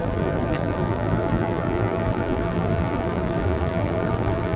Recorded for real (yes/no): no